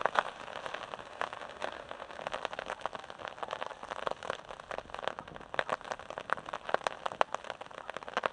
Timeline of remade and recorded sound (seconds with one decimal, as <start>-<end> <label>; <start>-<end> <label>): 0.0-1.0 recorded; 1.0-2.2 remade; 2.2-8.3 recorded